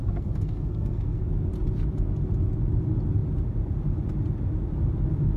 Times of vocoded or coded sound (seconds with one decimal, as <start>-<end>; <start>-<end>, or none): 0.0-1.2